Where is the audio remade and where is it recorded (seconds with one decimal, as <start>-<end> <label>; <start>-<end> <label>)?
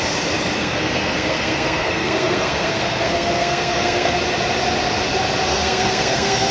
0.0-0.6 recorded; 0.6-4.1 remade; 4.1-5.5 recorded; 5.5-6.5 remade